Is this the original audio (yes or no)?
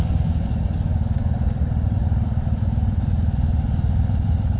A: yes